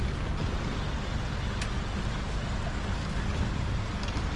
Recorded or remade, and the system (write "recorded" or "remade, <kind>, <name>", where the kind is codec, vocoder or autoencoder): recorded